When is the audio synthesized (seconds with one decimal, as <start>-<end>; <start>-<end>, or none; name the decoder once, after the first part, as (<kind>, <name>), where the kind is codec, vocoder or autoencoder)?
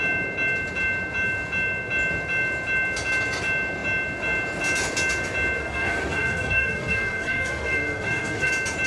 5.6-8.5 (codec, SNAC)